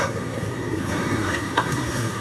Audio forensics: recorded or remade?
remade